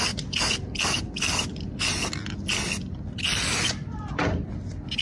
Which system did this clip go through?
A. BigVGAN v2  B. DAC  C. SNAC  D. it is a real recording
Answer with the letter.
D